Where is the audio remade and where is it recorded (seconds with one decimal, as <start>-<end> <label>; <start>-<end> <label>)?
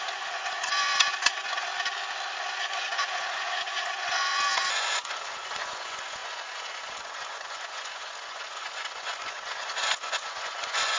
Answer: 0.0-1.7 remade; 1.7-2.5 recorded; 2.5-11.0 remade